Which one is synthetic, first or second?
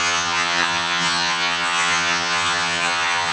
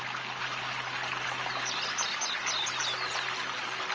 first